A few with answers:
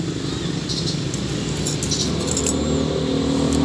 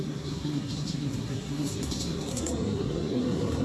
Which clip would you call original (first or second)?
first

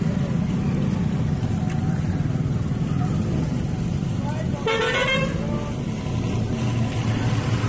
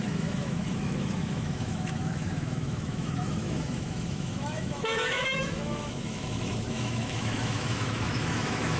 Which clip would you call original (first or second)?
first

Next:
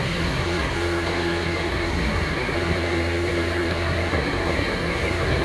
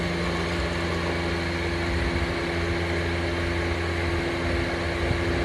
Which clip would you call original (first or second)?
second